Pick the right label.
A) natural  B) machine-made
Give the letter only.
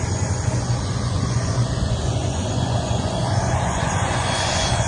B